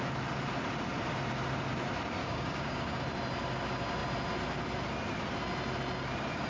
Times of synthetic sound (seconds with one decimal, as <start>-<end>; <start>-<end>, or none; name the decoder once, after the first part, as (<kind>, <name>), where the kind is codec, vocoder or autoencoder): 2.2-3.0 (codec, DAC)